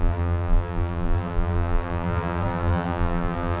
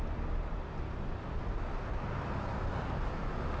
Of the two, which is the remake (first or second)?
first